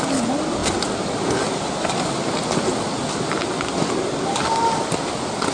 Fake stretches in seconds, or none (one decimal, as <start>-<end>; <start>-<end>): none